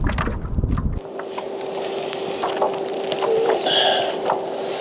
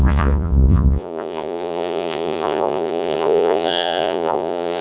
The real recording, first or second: first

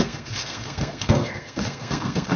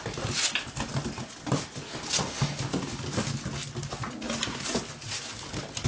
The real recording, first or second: second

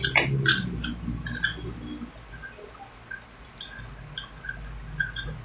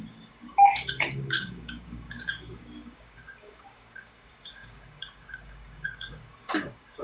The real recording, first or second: first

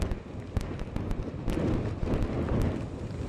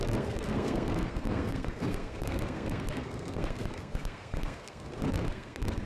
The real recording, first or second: first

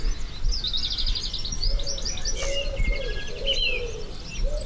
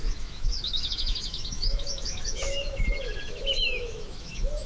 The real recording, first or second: first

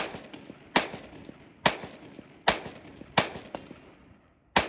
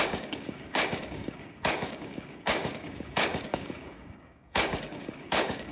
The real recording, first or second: first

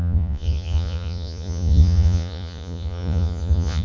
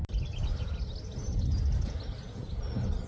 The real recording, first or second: second